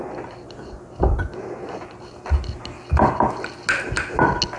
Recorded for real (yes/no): yes